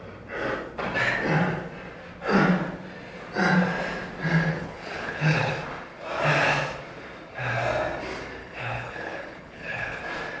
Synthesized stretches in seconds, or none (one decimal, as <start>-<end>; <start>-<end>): 4.5-5.5; 8.4-10.0